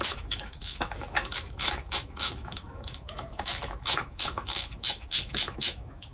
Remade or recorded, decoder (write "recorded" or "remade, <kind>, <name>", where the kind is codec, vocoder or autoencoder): remade, autoencoder, DAC-VAE